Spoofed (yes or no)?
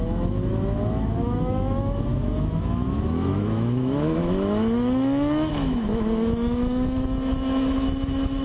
yes